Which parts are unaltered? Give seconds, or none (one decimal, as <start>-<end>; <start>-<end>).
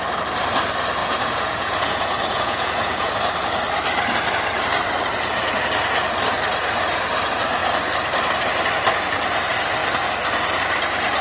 0.0-1.0; 3.1-11.2